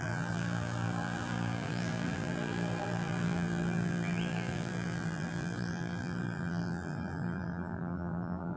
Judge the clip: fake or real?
fake